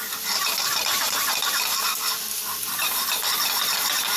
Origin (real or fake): real